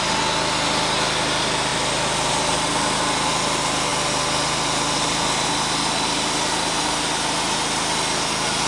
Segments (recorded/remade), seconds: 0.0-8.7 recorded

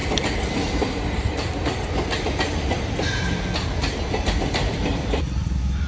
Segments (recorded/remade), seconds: 0.0-5.9 recorded

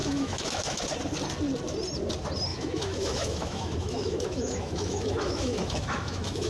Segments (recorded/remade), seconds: 0.0-0.8 remade; 0.8-2.5 recorded; 2.5-6.5 remade

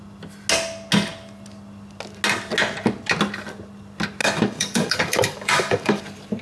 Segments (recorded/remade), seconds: 0.0-4.2 recorded; 4.2-6.0 remade; 6.0-6.4 recorded

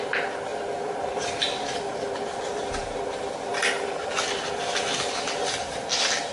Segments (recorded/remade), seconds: 0.0-6.3 recorded